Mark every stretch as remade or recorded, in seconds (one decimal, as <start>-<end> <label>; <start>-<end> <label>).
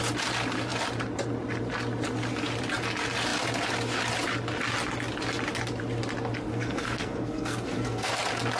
0.0-6.5 recorded; 6.5-8.1 remade; 8.1-8.6 recorded